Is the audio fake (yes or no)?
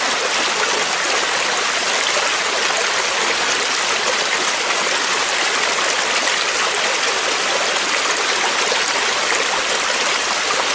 no